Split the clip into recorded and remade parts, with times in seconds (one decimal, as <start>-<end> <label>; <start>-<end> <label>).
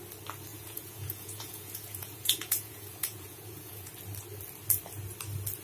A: 0.0-0.5 recorded; 0.5-3.9 remade; 3.9-5.6 recorded